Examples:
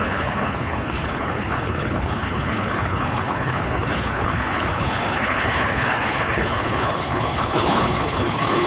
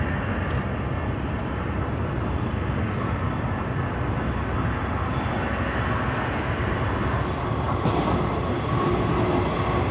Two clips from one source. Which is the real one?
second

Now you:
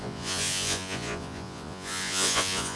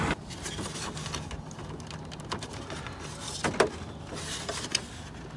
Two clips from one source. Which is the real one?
second